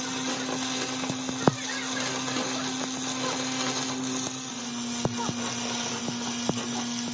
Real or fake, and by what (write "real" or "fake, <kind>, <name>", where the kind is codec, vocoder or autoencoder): real